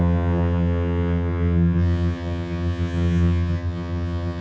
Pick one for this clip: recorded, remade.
remade